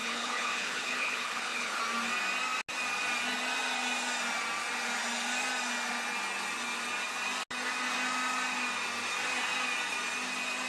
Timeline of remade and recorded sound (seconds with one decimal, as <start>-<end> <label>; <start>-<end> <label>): 0.0-1.8 remade; 1.8-10.7 recorded